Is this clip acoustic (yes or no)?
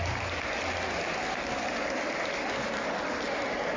yes